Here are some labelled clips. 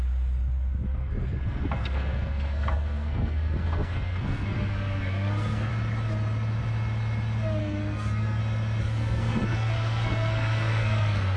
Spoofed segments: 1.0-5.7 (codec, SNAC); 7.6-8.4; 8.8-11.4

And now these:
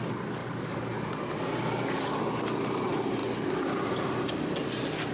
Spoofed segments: 0.4-1.4 (vocoder, BigVGAN v2)

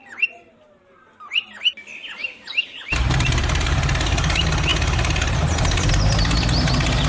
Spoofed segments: 2.2-3.8 (vocoder, BigVGAN v2)

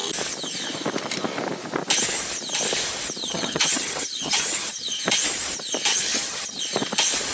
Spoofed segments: 3.2-5.0 (vocoder, HiFi-GAN); 5.9-6.6

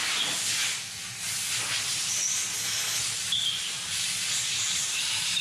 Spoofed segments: 3.2-5.4 (vocoder, BigVGAN v2)

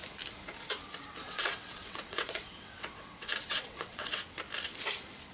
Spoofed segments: 1.2-4.4 (vocoder, WaveNeXt)

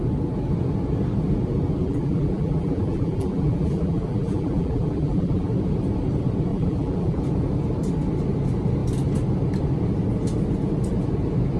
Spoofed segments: 1.8-5.5 (vocoder, BigVGAN v2); 6.5-7.2

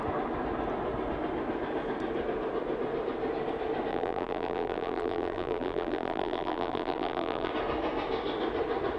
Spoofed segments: 3.9-7.5 (vocoder, BigVGAN v2)